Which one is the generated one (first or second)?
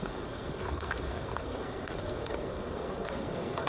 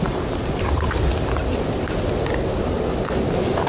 first